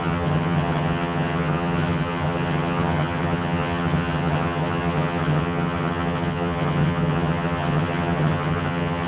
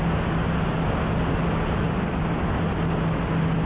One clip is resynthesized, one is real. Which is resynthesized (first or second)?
first